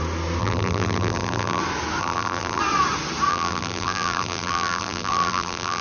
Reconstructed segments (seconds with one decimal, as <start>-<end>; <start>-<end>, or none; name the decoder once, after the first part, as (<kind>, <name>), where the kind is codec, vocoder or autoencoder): 0.4-1.6 (vocoder, BigVGAN v2); 2.0-2.6; 3.3-5.8